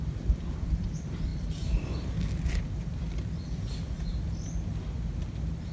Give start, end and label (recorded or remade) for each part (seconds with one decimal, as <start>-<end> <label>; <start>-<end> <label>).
0.0-5.7 recorded